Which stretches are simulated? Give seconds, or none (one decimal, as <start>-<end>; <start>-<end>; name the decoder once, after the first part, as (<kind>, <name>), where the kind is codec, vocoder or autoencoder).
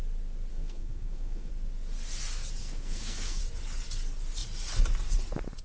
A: 0.5-1.5 (codec, SNAC); 2.6-3.4